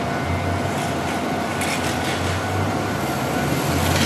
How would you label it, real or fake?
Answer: real